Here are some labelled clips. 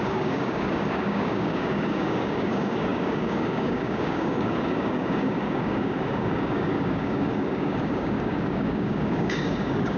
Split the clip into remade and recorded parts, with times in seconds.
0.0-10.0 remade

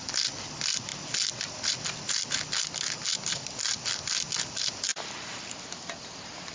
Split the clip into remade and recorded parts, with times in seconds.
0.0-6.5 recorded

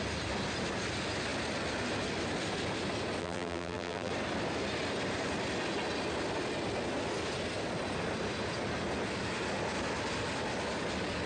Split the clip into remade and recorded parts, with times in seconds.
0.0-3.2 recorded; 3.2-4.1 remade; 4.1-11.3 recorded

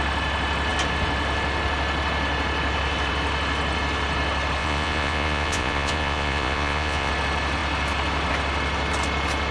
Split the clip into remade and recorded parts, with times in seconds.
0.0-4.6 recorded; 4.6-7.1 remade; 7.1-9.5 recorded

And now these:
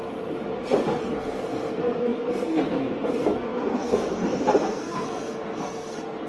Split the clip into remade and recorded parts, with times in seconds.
0.0-1.0 recorded; 1.0-6.3 remade

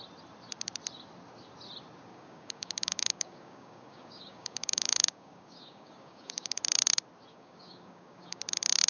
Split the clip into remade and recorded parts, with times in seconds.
0.0-2.1 recorded; 2.1-6.6 remade; 6.6-7.3 recorded; 7.3-8.4 remade; 8.4-8.9 recorded

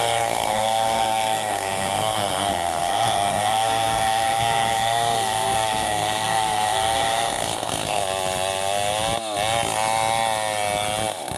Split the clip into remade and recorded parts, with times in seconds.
0.0-8.0 remade; 8.0-11.4 recorded